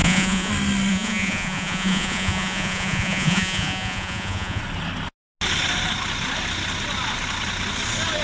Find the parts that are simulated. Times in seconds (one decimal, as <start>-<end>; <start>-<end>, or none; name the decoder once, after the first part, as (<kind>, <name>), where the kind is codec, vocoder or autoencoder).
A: 0.0-0.5 (vocoder, Vocos); 0.9-4.6